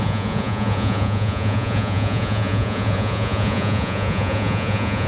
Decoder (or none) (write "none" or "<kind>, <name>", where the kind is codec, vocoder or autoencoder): vocoder, Vocos